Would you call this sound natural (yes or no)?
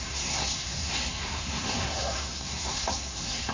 no